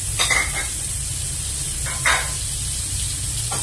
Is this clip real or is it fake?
real